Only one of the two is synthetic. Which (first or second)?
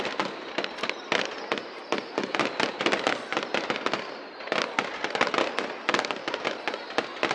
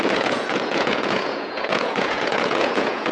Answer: second